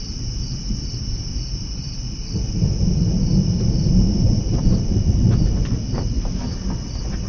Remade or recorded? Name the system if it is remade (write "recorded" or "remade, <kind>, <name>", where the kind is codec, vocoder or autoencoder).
recorded